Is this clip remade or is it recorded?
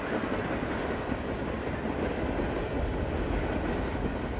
recorded